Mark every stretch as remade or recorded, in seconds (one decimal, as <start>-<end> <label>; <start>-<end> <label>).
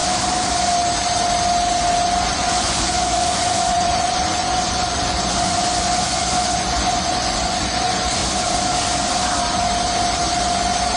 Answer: 0.0-2.2 recorded; 2.2-8.2 remade; 8.2-11.0 recorded